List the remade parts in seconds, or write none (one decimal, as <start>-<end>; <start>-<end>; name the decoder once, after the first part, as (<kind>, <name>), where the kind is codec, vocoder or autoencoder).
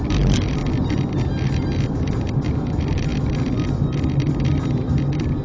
none